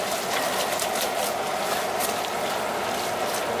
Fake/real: fake